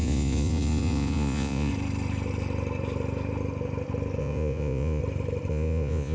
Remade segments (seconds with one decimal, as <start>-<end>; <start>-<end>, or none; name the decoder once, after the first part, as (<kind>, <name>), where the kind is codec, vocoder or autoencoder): 0.0-1.7 (vocoder, Vocos); 4.2-5.0; 5.5-6.1

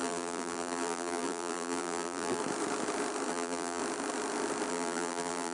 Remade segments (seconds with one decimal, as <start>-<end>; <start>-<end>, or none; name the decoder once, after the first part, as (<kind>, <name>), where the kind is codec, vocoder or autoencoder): 0.0-2.4 (vocoder, BigVGAN v2); 3.3-3.8; 4.7-5.5